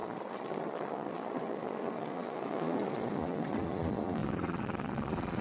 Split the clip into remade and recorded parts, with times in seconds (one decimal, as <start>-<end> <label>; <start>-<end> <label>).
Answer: 0.0-5.4 remade